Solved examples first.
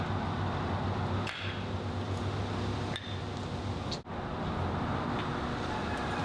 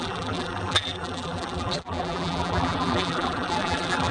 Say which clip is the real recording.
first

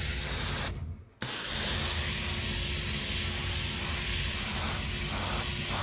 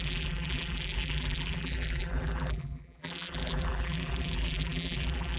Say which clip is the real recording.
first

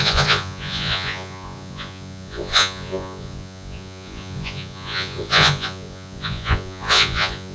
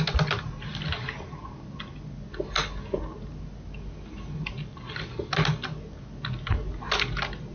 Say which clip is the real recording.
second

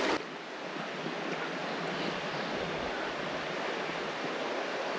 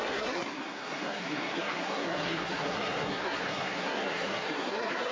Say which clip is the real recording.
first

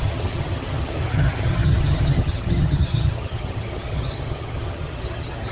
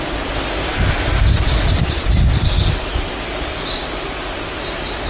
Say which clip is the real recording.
second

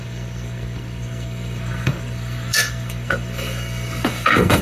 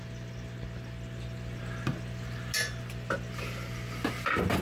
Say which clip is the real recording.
second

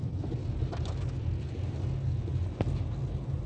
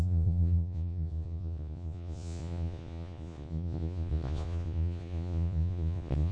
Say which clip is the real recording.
first